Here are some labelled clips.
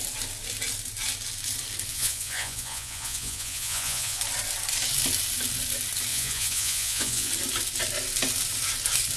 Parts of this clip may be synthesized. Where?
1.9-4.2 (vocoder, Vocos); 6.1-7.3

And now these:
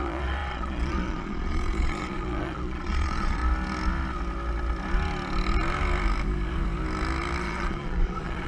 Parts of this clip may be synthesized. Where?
0.0-3.4 (vocoder, Vocos); 7.4-8.5

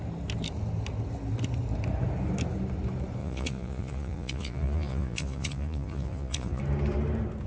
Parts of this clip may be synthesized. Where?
3.2-6.6 (vocoder, Vocos)

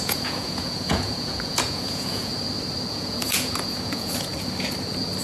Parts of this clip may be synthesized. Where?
0.0-2.3 (vocoder, Vocos); 2.9-4.3

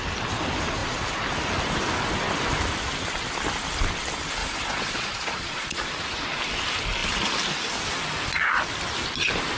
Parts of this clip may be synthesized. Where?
4.4-5.8 (vocoder, Vocos)

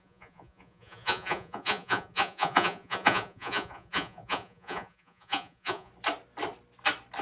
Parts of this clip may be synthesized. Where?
0.0-5.9 (vocoder, Vocos)

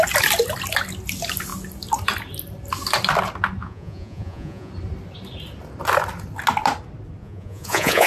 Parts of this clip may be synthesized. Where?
3.6-4.7 (vocoder, Vocos); 7.2-8.1